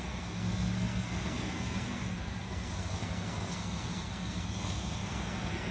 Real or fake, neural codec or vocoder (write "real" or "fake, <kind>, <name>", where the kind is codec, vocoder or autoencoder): fake, codec, SNAC